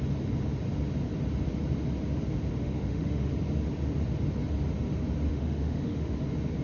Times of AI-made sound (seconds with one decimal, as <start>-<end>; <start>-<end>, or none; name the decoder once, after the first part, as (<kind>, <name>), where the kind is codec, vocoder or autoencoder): 2.6-3.3 (autoencoder, DAC-VAE); 5.3-6.1